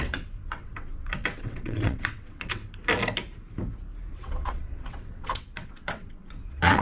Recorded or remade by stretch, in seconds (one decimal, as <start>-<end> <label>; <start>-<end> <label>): 0.0-2.6 remade; 2.6-4.1 recorded; 4.1-6.8 remade